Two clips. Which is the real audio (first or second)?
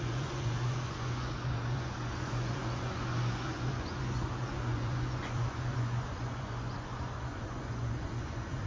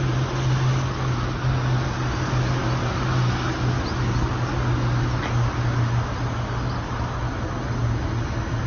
second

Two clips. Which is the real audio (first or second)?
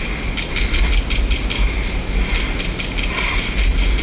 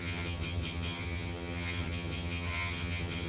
first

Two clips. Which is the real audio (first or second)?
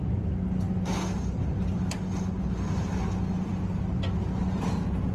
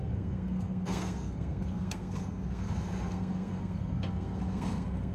first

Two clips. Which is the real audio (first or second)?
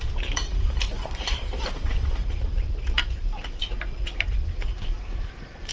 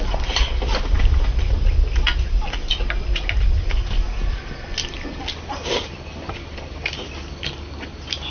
second